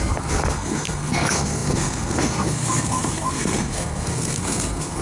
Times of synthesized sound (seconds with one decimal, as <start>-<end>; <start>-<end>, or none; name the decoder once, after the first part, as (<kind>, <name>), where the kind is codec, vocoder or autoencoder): 0.0-5.0 (codec, SNAC)